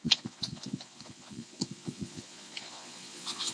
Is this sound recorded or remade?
remade